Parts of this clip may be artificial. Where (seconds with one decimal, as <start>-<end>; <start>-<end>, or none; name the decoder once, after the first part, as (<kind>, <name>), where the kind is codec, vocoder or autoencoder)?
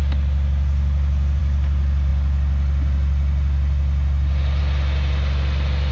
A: none